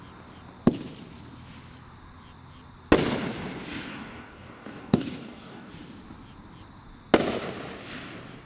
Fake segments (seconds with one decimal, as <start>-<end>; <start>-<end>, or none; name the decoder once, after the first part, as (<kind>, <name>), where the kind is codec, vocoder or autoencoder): 3.9-5.7 (codec, DAC)